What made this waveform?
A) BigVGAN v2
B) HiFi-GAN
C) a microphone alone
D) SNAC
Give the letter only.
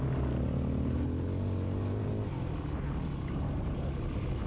C